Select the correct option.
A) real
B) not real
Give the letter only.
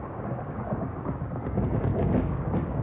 B